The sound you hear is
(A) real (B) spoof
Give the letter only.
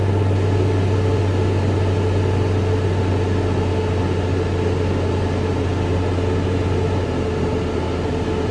A